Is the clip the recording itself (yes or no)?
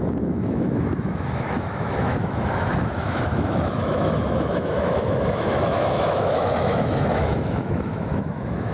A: no